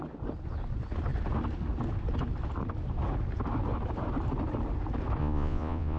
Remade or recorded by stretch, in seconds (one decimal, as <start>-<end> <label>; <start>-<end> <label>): 0.0-5.2 recorded; 5.2-6.0 remade